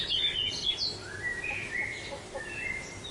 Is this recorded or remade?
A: recorded